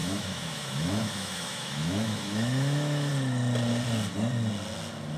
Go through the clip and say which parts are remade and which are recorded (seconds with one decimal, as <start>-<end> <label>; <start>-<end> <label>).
0.0-3.1 remade; 3.1-5.2 recorded